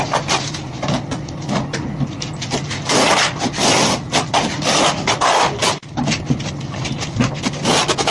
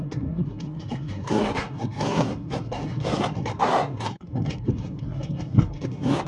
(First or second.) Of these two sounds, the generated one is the second